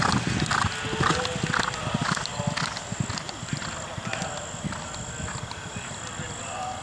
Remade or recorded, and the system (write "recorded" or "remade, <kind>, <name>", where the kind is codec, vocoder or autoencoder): recorded